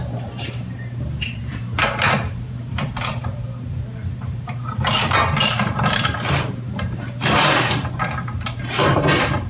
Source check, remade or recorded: remade